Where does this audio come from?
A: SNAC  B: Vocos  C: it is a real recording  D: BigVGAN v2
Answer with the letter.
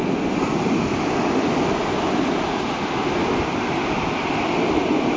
C